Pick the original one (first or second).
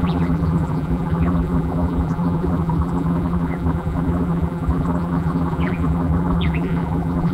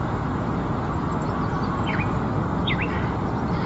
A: second